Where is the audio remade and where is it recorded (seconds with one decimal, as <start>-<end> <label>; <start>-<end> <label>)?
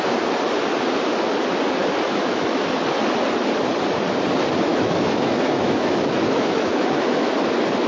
0.0-1.8 recorded; 1.8-2.8 remade; 2.8-4.7 recorded; 4.7-7.3 remade; 7.3-7.9 recorded